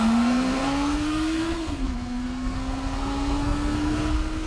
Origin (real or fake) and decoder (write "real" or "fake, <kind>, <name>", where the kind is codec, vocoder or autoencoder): fake, codec, SNAC